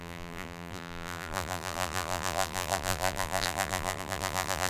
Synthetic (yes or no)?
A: yes